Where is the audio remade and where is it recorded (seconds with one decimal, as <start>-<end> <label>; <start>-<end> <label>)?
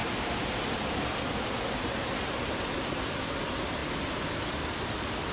0.0-5.3 recorded